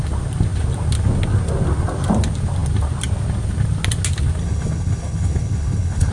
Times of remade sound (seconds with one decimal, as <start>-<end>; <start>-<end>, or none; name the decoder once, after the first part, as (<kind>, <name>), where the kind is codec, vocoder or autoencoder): 4.4-6.1 (codec, HILCodec)